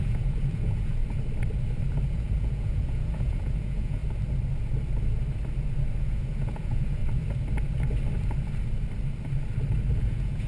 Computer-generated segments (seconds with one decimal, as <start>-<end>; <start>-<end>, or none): 0.0-1.0; 2.1-4.0; 6.0-7.0; 10.0-10.5